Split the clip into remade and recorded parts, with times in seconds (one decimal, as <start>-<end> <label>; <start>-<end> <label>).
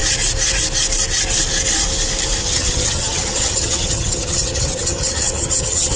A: 0.0-2.4 recorded; 2.4-6.0 remade